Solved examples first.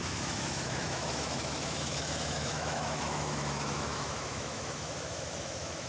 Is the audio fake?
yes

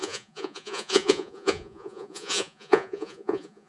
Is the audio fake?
yes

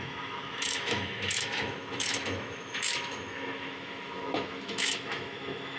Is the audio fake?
yes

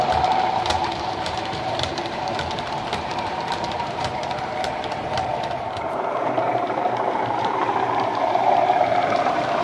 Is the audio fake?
yes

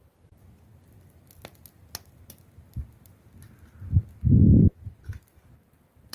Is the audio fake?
no